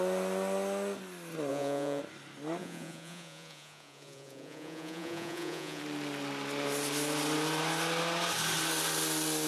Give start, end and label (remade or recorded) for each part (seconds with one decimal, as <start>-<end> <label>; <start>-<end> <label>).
0.0-1.5 recorded; 1.5-2.0 remade; 2.0-2.6 recorded; 2.6-5.8 remade; 5.8-9.5 recorded